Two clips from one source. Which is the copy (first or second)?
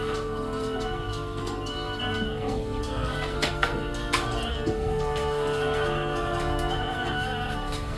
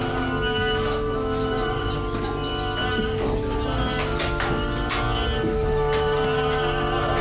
first